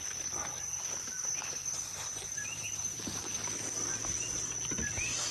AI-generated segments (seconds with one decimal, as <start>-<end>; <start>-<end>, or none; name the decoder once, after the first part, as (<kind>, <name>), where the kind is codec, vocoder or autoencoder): 1.6-3.0 (vocoder, BigVGAN v2)

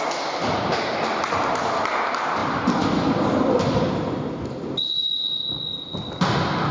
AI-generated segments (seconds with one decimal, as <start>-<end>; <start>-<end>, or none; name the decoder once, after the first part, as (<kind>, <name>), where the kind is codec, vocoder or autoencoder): 2.4-4.4 (vocoder, BigVGAN v2)

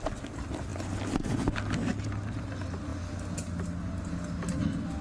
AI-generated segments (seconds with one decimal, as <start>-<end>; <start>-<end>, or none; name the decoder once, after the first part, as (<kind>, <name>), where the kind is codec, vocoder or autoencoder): none